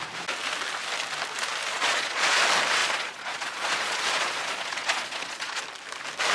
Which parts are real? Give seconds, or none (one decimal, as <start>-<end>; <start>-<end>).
0.0-1.7; 2.4-2.8; 5.6-6.3